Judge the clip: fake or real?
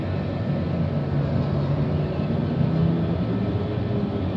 real